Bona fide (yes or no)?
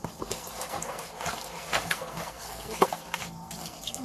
no